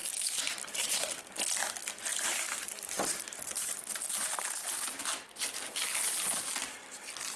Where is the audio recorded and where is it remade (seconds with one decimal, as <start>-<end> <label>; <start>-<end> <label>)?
0.0-1.2 remade; 1.2-2.1 recorded; 2.1-5.0 remade; 5.0-7.4 recorded